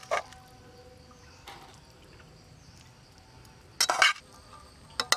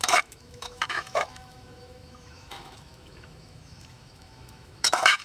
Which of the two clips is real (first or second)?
first